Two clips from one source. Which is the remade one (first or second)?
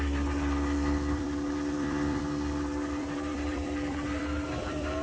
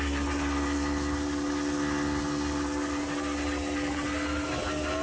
first